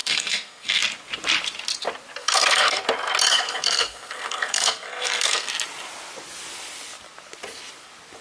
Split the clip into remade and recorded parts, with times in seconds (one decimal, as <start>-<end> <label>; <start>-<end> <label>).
0.0-0.8 remade; 0.8-2.2 recorded; 2.2-2.8 remade; 2.8-3.3 recorded; 3.3-5.5 remade; 5.5-8.2 recorded